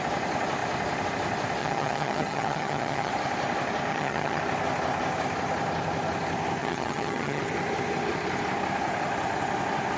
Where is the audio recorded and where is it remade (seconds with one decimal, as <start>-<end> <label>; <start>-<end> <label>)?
0.0-1.6 recorded; 1.6-3.1 remade; 3.1-3.9 recorded; 3.9-4.4 remade; 4.4-6.6 recorded; 6.6-7.4 remade; 7.4-10.0 recorded